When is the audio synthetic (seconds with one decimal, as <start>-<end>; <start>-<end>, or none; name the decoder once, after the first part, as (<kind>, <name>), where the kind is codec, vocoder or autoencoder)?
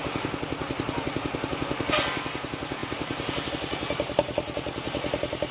none